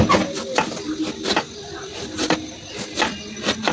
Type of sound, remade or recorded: recorded